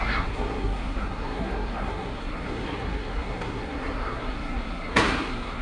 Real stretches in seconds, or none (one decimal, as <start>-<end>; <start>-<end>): none